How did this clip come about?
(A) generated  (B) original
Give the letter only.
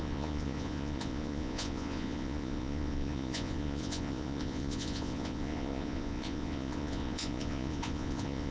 A